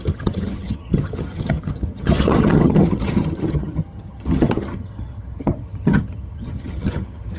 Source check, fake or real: fake